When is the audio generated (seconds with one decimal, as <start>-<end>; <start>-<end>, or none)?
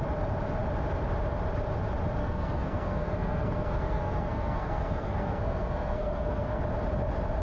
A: 2.2-6.6